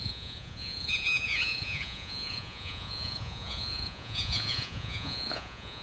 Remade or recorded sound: remade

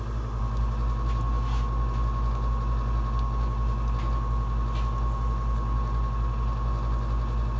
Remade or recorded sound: recorded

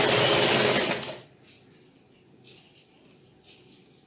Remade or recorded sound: recorded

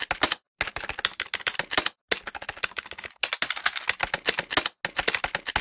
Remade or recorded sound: recorded